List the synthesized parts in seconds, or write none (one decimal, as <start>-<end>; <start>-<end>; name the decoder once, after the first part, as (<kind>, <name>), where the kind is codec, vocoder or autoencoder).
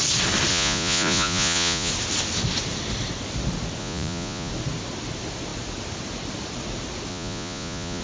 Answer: 0.5-1.9 (vocoder, Vocos); 3.8-4.5; 7.1-8.0